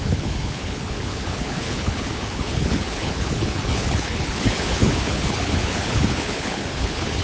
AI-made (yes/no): yes